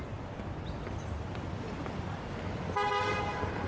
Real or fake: real